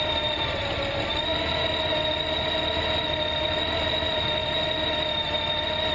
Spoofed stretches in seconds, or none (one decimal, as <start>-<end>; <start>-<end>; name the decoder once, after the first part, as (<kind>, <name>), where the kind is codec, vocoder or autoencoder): none